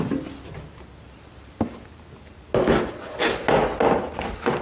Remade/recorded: recorded